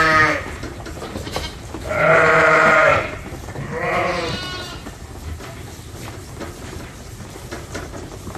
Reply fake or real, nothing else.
real